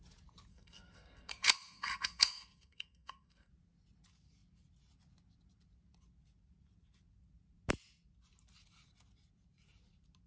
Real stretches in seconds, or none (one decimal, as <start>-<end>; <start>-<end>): 0.0-0.5; 3.5-10.3